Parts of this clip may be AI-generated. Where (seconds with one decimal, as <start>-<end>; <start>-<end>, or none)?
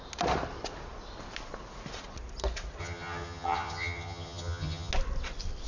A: 2.8-4.9